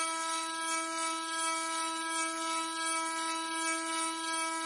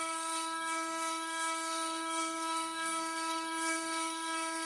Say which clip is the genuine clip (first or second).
first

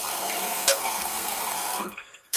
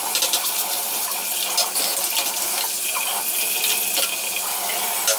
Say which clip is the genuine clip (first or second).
second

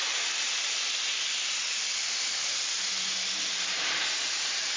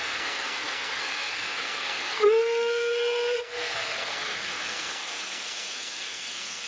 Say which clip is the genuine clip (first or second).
first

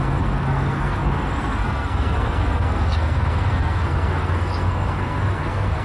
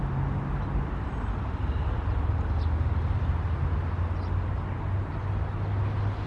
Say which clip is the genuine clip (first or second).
second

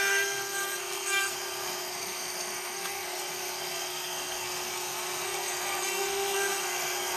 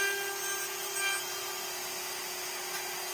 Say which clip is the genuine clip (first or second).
second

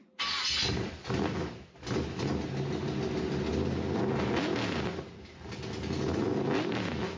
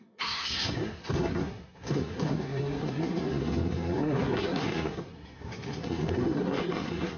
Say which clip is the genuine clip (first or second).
first